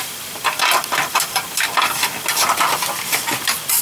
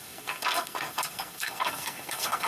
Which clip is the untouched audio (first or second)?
first